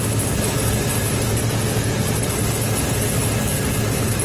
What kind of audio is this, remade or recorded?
recorded